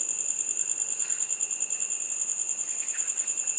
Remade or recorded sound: recorded